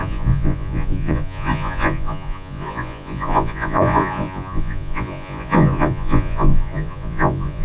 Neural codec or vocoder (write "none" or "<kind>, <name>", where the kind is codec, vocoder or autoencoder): vocoder, Vocos